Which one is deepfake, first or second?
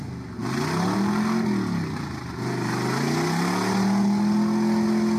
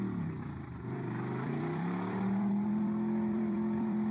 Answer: second